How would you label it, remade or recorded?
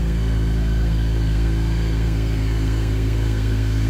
remade